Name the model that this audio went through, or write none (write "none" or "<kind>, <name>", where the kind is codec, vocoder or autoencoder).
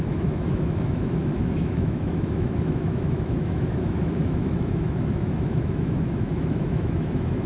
autoencoder, DAC-VAE